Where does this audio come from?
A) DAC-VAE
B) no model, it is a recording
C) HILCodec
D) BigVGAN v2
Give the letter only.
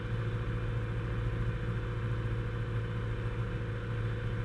B